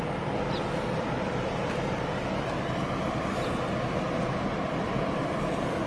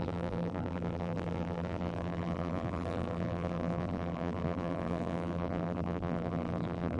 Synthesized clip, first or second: second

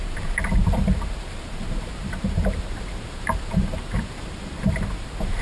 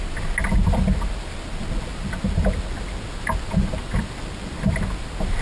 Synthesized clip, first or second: first